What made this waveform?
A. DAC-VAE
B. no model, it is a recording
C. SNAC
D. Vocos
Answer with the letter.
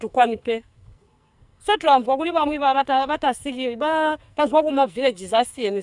C